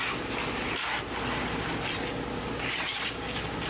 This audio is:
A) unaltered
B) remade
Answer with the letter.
A